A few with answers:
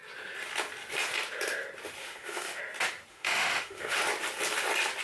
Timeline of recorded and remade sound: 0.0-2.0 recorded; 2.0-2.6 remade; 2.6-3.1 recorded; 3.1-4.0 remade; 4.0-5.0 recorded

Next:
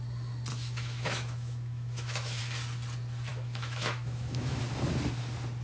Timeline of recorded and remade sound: 0.0-0.5 recorded; 0.5-2.4 remade; 2.4-3.3 recorded; 3.3-4.6 remade; 4.6-5.6 recorded